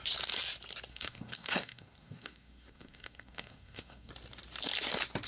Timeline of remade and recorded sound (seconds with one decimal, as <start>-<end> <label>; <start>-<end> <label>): 0.0-0.9 recorded; 0.9-4.1 remade; 4.1-5.3 recorded